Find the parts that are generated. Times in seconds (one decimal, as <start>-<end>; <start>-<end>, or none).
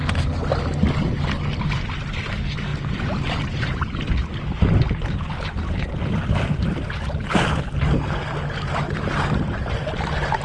none